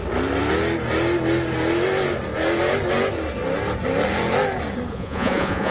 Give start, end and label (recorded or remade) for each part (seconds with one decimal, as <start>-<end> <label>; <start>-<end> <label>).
0.0-4.9 recorded; 4.9-5.7 remade